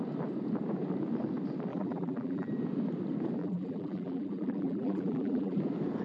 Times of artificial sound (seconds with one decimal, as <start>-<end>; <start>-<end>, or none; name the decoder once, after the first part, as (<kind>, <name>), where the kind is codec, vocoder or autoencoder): 1.7-2.5 (vocoder, BigVGAN v2); 3.4-5.6